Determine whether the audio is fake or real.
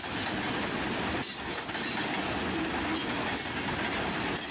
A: real